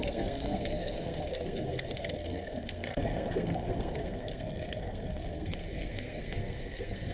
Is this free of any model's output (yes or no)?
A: no